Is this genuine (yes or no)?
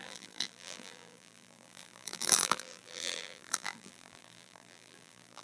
no